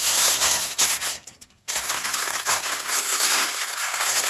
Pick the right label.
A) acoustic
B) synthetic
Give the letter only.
B